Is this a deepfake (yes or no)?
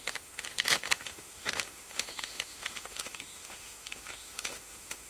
yes